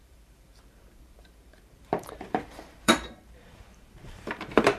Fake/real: fake